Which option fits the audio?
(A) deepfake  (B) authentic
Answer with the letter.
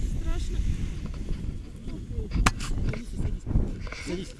B